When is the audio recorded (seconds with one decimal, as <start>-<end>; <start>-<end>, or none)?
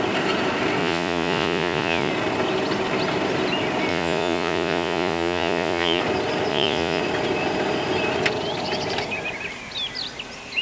0.0-0.8; 2.1-3.9; 6.0-6.5; 7.0-10.6